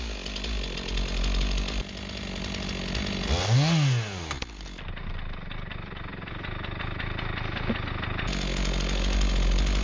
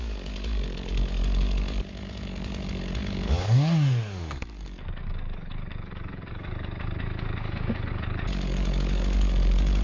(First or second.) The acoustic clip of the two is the first